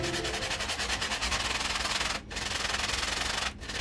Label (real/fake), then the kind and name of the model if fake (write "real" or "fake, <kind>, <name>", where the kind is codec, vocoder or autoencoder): real